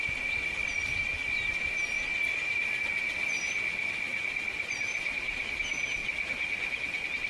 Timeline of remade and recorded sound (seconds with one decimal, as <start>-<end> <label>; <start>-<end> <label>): 0.0-0.6 recorded; 0.6-2.6 remade; 2.6-4.9 recorded; 4.9-5.5 remade; 5.5-7.3 recorded